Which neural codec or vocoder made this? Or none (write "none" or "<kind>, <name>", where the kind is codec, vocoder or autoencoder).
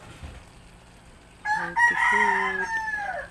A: none